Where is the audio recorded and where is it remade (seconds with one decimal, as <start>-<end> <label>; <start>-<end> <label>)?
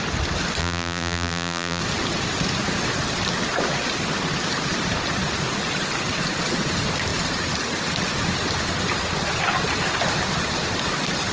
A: 0.0-0.6 recorded; 0.6-1.8 remade; 1.8-11.3 recorded